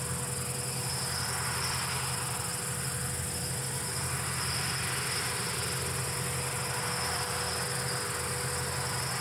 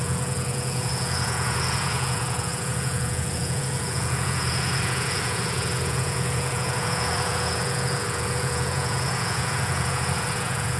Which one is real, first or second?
first